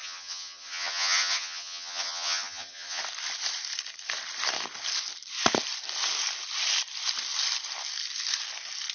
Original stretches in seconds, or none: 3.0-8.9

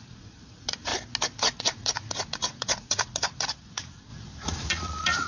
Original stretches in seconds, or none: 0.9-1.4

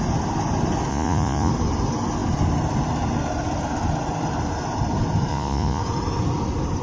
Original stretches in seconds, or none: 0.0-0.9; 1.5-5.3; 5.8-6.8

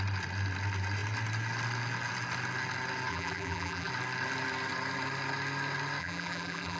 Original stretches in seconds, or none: 0.0-3.1; 3.9-6.0